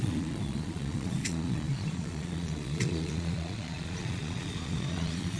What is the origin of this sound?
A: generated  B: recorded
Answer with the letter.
A